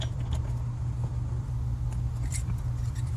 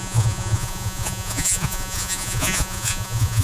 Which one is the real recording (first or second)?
first